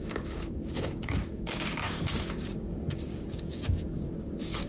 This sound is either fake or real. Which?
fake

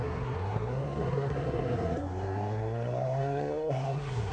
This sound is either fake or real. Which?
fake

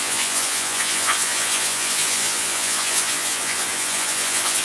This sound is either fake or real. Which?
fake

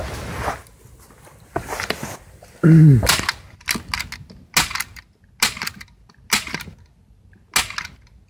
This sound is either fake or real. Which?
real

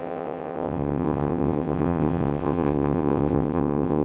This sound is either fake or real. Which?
fake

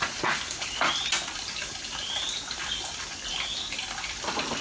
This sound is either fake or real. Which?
real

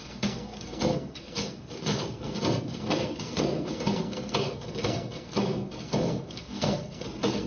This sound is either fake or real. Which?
fake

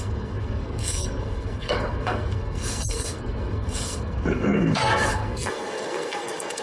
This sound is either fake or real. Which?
fake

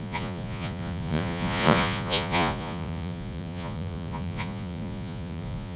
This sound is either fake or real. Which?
fake